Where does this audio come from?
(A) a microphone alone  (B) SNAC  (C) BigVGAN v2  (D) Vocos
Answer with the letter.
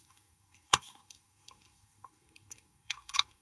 B